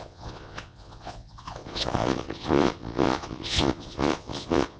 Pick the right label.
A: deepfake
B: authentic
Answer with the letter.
A